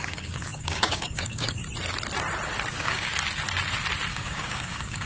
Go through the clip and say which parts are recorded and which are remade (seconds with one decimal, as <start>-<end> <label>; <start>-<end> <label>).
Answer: 0.0-1.6 remade; 1.6-2.7 recorded; 2.7-3.1 remade; 3.1-4.1 recorded; 4.1-5.1 remade